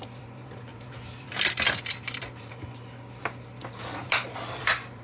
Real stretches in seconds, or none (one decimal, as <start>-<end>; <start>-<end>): none